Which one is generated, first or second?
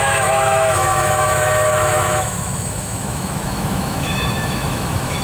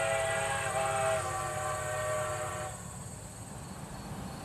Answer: first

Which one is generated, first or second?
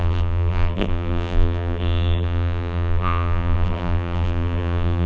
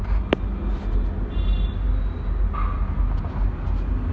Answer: first